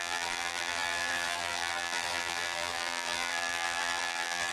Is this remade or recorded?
remade